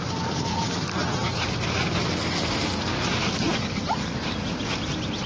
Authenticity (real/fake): fake